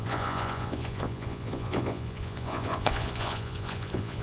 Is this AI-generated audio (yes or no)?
yes